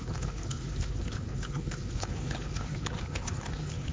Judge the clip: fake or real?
fake